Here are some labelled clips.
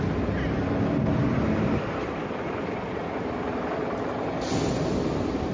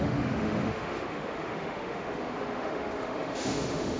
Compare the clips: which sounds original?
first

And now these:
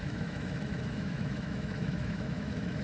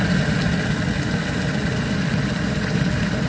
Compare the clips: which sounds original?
second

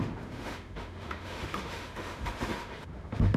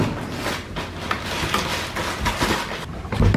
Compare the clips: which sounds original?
second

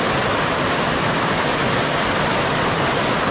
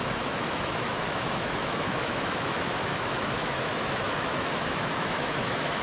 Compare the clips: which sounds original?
first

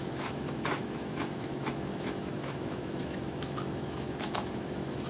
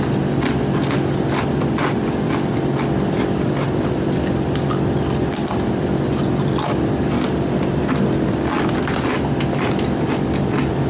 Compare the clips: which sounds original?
second